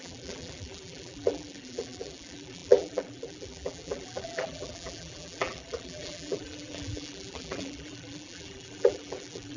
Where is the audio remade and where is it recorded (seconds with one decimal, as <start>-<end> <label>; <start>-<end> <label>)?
0.0-9.6 remade